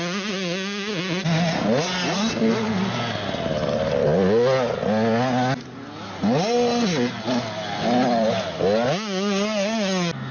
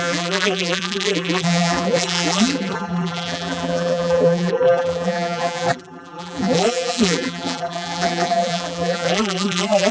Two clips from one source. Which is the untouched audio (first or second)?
first